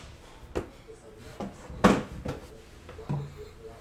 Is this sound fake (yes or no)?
no